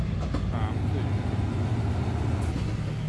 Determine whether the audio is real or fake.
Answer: real